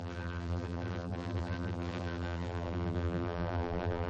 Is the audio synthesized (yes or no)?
yes